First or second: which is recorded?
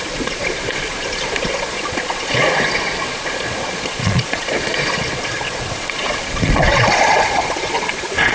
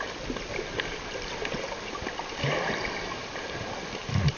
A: second